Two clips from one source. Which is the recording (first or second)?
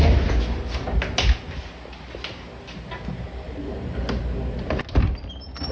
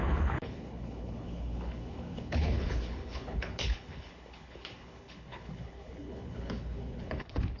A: first